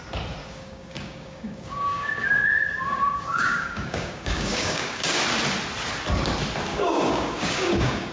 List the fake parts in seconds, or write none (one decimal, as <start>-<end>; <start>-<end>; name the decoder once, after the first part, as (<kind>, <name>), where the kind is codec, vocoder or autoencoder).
0.4-5.2 (codec, DAC); 6.7-8.1